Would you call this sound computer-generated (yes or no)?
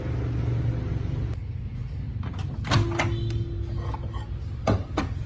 no